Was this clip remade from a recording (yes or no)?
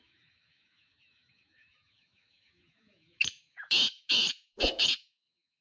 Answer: yes